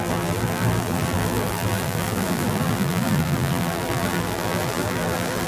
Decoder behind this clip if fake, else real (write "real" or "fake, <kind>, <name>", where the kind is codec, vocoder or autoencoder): fake, vocoder, BigVGAN v2